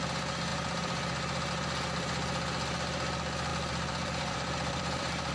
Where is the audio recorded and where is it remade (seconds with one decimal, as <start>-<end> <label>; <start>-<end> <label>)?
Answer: 0.0-0.5 recorded; 0.5-1.5 remade; 1.5-3.5 recorded; 3.5-5.3 remade